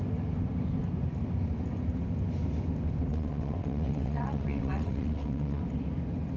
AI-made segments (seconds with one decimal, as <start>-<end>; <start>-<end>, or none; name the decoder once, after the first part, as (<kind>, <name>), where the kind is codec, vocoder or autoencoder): 3.1-5.6 (vocoder, WaveNeXt)